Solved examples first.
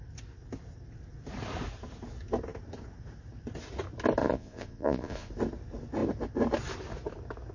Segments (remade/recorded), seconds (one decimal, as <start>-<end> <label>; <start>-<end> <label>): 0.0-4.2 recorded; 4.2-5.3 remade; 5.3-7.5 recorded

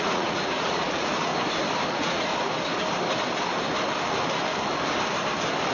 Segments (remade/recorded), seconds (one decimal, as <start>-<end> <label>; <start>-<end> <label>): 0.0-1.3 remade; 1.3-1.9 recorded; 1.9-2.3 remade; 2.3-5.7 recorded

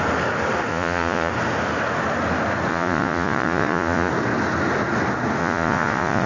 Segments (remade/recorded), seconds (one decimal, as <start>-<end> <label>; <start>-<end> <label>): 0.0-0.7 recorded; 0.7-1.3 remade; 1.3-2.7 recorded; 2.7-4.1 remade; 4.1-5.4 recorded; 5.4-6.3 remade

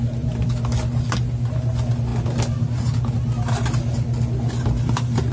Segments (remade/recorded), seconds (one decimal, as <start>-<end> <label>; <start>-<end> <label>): 0.0-5.3 recorded

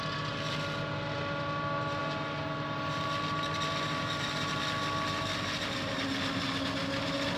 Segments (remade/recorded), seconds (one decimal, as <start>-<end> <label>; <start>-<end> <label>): 0.0-7.4 recorded